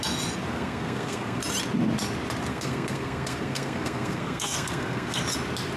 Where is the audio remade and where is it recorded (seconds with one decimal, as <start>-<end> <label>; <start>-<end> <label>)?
0.0-0.5 recorded; 0.5-1.4 remade; 1.4-2.5 recorded; 2.5-5.2 remade; 5.2-5.8 recorded